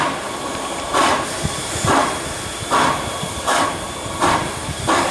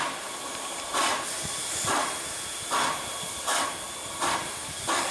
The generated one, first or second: first